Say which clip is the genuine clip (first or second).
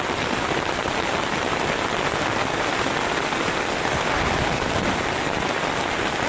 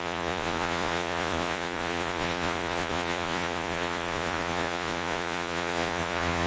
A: first